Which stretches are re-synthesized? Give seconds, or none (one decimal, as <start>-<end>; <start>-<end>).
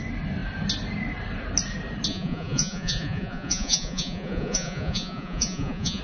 2.1-6.0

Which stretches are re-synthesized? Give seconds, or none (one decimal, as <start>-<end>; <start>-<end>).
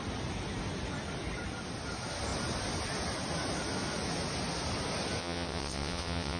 5.2-6.4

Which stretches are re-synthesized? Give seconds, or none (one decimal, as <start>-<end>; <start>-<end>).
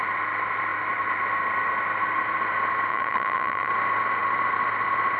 2.9-3.7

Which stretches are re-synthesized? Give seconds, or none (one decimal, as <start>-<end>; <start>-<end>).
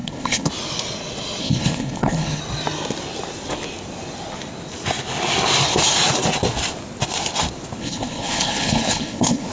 0.0-0.5; 1.4-2.4; 7.8-9.5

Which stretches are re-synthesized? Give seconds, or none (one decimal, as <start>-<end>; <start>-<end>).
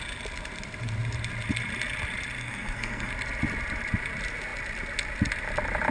2.4-3.1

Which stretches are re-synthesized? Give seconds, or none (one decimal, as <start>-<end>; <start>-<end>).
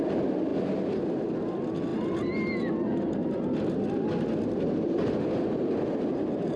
none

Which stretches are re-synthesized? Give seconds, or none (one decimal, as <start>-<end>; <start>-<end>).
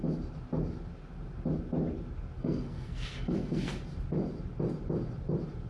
2.4-3.8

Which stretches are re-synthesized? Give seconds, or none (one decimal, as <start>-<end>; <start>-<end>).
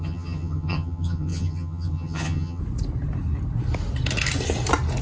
0.0-2.6